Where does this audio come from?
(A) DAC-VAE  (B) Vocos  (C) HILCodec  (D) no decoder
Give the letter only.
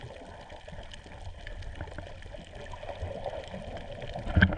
D